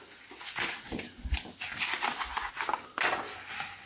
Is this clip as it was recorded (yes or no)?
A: yes